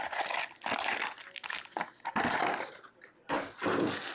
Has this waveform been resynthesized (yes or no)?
no